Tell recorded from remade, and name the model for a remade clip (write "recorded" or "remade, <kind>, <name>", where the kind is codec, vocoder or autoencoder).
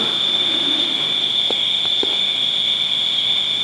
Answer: remade, autoencoder, DAC-VAE